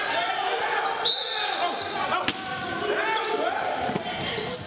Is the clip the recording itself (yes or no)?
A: yes